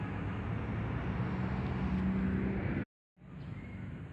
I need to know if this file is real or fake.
real